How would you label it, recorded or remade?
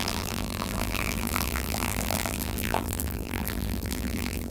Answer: remade